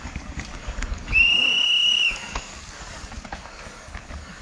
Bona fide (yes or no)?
no